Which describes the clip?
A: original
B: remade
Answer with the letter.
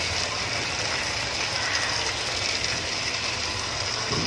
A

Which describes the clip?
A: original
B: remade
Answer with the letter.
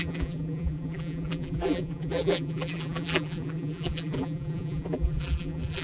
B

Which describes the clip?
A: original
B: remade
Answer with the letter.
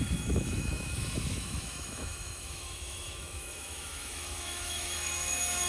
B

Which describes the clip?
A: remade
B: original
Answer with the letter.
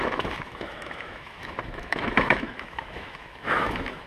A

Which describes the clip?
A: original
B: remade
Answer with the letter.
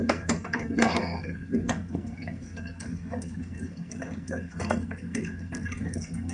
B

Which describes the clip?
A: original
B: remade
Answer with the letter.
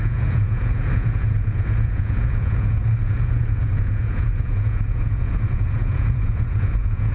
B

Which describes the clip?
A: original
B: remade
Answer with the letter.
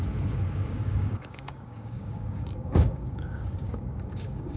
B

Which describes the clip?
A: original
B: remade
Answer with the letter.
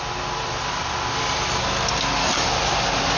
A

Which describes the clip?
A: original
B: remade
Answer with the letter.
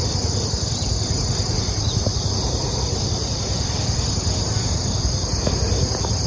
A